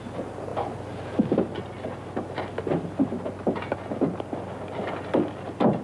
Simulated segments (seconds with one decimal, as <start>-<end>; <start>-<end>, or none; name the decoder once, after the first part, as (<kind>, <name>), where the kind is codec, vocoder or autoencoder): none